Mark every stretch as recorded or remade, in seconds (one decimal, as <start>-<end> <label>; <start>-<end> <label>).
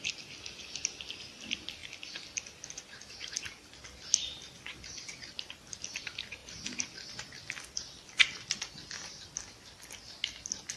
0.0-10.8 recorded